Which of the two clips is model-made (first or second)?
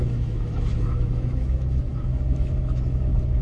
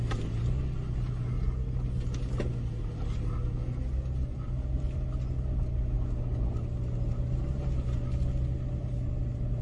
first